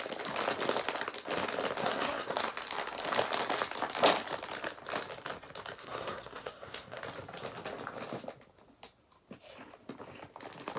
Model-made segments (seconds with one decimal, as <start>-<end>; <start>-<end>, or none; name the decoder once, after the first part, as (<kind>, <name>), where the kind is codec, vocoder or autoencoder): 1.8-2.4 (codec, SNAC); 5.8-7.0